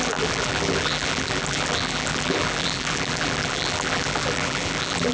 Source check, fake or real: fake